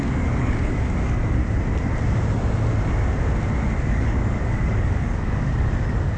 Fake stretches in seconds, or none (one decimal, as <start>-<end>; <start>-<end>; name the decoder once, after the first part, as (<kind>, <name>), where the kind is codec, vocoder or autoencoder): 0.0-1.4 (codec, DAC); 3.8-6.2